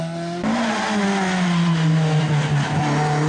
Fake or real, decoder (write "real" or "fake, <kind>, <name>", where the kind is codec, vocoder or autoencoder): real